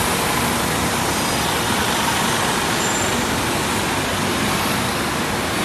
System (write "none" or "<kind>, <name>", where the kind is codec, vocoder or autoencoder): none